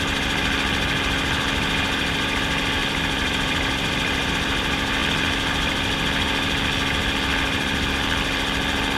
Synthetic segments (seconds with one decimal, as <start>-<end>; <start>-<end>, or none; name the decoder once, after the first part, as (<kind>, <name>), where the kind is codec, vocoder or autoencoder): 2.8-4.3 (vocoder, BigVGAN v2)